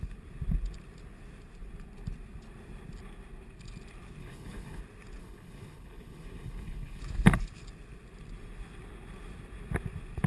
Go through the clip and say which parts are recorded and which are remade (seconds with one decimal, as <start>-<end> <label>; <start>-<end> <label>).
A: 0.0-4.2 recorded; 4.2-4.8 remade; 4.8-5.2 recorded; 5.2-7.0 remade; 7.0-10.3 recorded

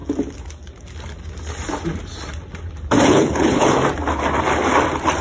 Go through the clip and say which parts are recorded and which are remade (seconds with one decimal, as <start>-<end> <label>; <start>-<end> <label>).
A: 0.0-3.1 recorded; 3.1-3.8 remade; 3.8-5.2 recorded

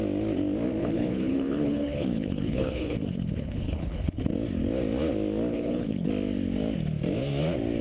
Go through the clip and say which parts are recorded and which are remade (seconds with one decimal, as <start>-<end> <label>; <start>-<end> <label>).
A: 0.0-0.8 recorded; 0.8-4.2 remade; 4.2-5.5 recorded; 5.5-6.1 remade; 6.1-7.8 recorded

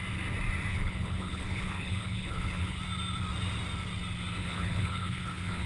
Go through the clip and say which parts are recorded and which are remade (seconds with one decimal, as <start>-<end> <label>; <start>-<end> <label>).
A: 0.0-0.7 recorded; 0.7-2.8 remade; 2.8-4.4 recorded; 4.4-5.7 remade

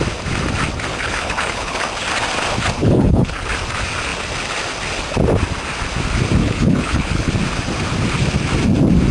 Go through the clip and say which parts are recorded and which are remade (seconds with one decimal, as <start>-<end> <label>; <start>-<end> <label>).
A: 0.0-0.9 recorded; 0.9-1.8 remade; 1.8-2.8 recorded; 2.8-3.5 remade; 3.5-6.4 recorded; 6.4-7.3 remade; 7.3-9.1 recorded

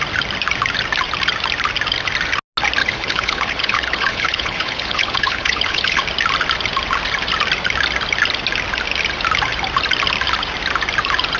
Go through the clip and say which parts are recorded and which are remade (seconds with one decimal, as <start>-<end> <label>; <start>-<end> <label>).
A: 0.0-2.8 recorded; 2.8-6.0 remade; 6.0-11.4 recorded

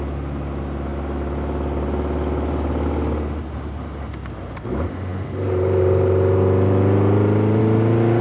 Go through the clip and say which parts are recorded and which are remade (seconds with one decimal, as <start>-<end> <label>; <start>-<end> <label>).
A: 0.0-8.2 recorded

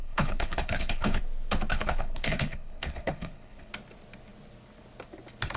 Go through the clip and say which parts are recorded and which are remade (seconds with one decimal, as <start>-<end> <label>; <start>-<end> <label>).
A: 0.0-1.2 remade; 1.2-1.7 recorded; 1.7-3.7 remade; 3.7-5.6 recorded